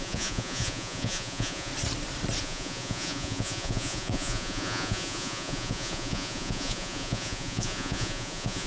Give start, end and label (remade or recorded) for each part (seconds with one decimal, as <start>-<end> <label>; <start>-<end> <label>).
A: 0.0-1.7 remade; 1.7-2.4 recorded; 2.4-8.7 remade